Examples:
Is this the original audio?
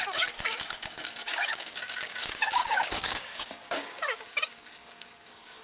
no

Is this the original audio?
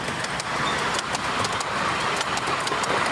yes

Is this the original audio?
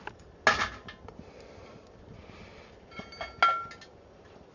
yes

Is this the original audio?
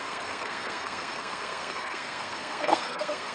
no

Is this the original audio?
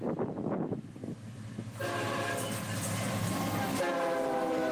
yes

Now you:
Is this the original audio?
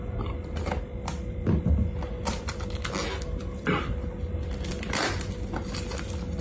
yes